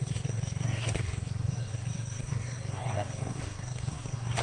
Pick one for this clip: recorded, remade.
remade